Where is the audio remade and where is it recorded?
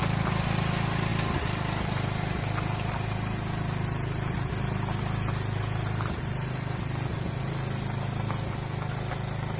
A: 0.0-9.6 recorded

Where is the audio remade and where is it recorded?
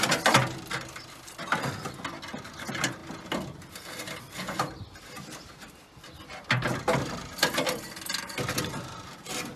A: 0.0-9.6 recorded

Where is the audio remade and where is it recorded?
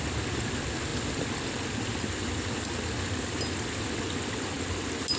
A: 0.0-5.2 recorded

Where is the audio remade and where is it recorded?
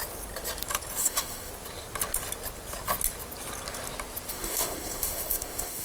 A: 0.0-1.0 recorded; 1.0-1.5 remade; 1.5-4.3 recorded; 4.3-5.8 remade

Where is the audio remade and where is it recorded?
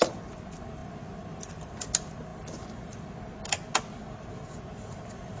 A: 0.0-5.4 recorded